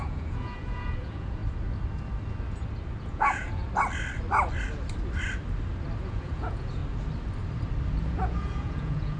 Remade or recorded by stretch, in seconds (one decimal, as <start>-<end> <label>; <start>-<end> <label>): 0.0-1.4 remade; 1.4-3.0 recorded; 3.0-3.6 remade; 3.6-6.0 recorded; 6.0-6.8 remade; 6.8-8.0 recorded; 8.0-9.2 remade